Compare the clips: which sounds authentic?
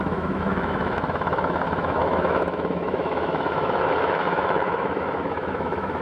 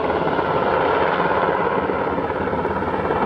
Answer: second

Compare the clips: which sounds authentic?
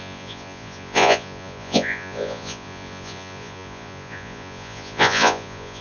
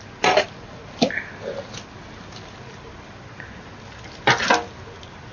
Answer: second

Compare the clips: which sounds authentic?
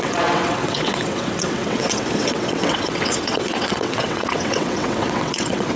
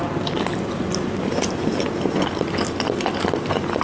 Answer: second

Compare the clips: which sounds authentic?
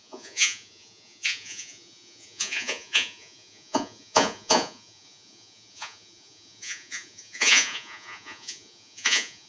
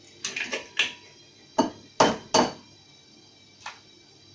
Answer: second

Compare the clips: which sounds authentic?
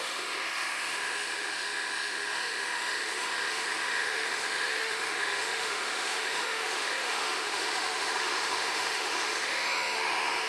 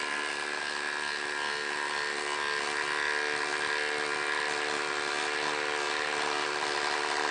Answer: second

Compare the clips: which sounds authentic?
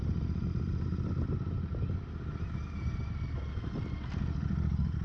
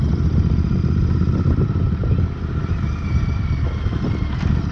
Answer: first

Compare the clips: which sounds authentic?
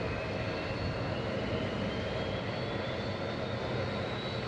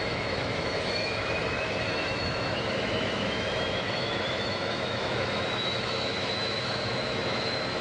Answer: first